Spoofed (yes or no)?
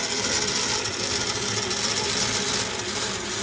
no